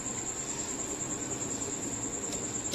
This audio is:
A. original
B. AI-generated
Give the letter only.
A